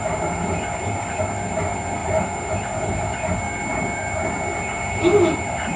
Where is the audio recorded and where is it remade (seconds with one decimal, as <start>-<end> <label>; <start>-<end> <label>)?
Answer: 0.0-5.8 recorded